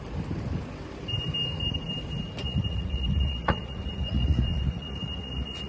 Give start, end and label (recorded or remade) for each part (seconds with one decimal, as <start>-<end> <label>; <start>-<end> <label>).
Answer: 0.0-2.4 recorded; 2.4-5.7 remade